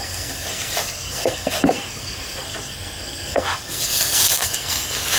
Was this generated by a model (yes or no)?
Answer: yes